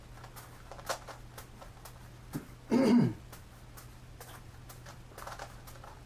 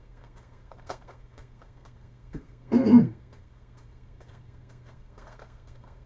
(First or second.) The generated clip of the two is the second